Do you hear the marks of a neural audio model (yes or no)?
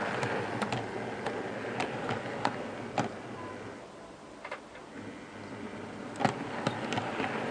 no